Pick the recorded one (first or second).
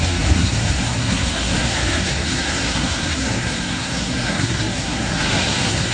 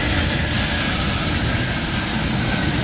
second